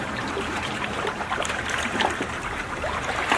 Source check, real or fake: fake